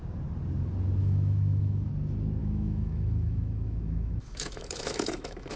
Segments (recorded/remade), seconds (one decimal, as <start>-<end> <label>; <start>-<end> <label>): 0.0-1.0 recorded; 1.0-1.9 remade; 1.9-2.4 recorded; 2.4-5.6 remade